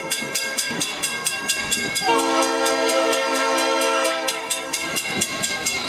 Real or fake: fake